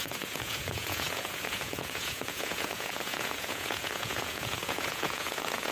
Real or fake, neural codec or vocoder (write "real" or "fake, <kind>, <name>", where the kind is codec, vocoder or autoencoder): fake, vocoder, Vocos